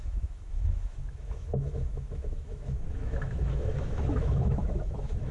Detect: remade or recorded remade